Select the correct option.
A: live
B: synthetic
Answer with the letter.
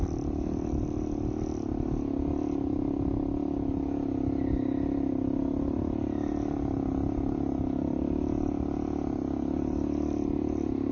A